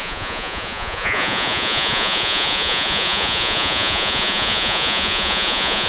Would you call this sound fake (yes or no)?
yes